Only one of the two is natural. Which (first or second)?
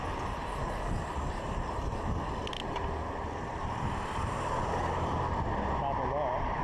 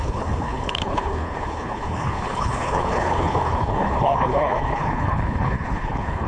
first